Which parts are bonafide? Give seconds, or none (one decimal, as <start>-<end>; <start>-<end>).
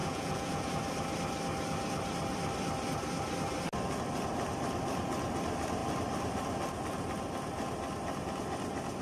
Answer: 0.7-9.0